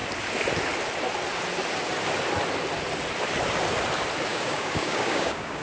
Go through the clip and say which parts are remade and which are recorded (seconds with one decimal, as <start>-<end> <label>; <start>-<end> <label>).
0.0-4.3 recorded; 4.3-5.6 remade